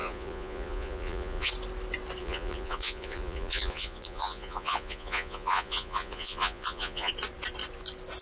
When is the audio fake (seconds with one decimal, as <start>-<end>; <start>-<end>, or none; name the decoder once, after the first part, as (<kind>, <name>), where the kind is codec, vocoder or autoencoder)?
0.0-1.5 (vocoder, Vocos); 2.2-7.1